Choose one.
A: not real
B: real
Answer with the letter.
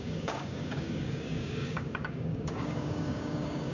A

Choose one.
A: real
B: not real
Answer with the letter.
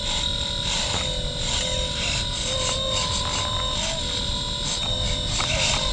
A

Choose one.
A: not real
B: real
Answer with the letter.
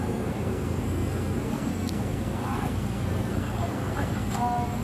A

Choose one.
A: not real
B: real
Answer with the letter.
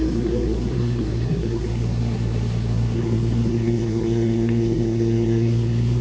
A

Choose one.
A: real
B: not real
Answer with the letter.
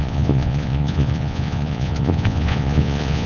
B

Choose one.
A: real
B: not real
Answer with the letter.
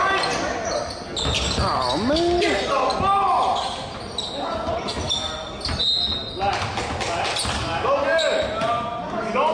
A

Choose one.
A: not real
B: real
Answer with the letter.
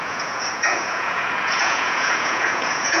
A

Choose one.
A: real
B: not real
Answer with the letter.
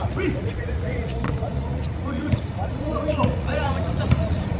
B